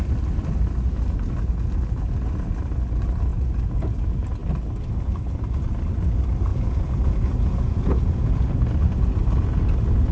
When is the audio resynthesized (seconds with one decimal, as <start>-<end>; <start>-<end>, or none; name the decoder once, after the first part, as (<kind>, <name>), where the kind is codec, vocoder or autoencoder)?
3.3-4.0 (vocoder, Vocos); 6.5-8.5